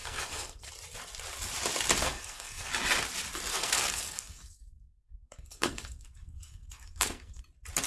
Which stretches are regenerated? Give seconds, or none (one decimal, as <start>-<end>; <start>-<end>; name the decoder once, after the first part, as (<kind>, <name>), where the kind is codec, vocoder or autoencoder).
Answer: 0.0-0.7 (codec, SNAC); 2.0-2.7; 3.5-7.4

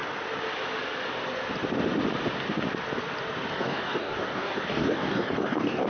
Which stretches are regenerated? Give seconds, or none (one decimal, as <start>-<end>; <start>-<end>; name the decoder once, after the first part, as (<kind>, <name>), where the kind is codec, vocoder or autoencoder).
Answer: 3.5-5.9 (codec, DAC)